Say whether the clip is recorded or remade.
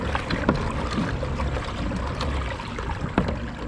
recorded